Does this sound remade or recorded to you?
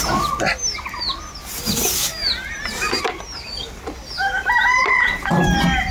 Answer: recorded